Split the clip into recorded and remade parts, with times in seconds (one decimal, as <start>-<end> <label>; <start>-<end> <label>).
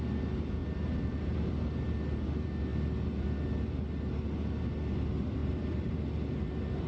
0.0-0.6 recorded; 0.6-1.5 remade; 1.5-5.4 recorded; 5.4-6.0 remade; 6.0-6.9 recorded